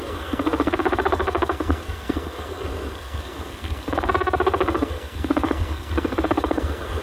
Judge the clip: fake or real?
fake